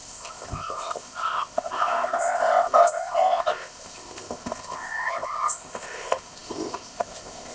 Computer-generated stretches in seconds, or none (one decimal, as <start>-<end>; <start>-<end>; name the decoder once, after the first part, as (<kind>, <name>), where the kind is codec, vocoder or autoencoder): 0.0-7.5 (codec, ZipCodec)